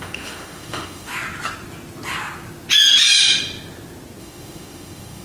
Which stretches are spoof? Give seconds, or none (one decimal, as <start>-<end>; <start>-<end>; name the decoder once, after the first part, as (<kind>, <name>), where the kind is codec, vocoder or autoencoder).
0.0-1.1 (autoencoder, DAC-VAE); 4.2-5.2